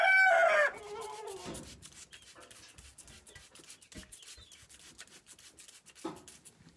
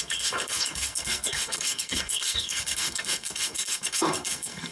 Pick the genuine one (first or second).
first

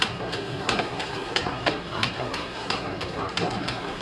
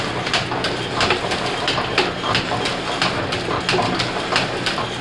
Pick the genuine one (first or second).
second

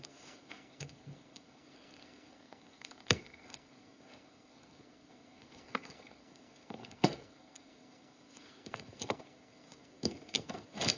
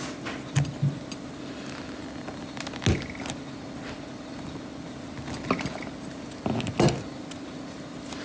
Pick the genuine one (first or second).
second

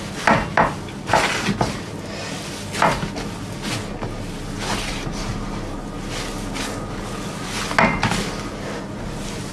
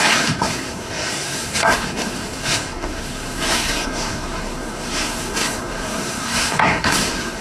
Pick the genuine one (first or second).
first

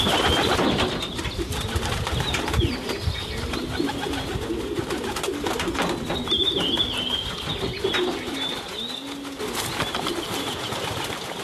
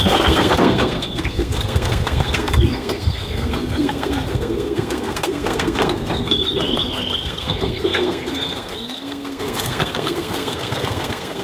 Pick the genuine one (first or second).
first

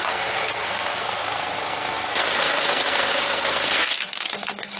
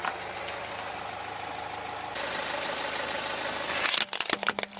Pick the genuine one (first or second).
second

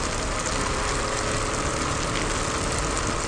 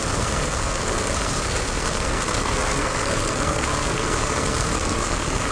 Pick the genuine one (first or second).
first